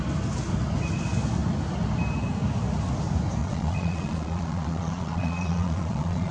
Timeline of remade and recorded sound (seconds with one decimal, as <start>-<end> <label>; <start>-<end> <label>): 0.0-3.4 recorded; 3.4-6.3 remade